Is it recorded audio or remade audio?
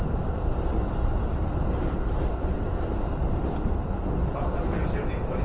recorded